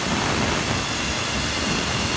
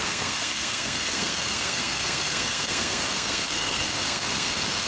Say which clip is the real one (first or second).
first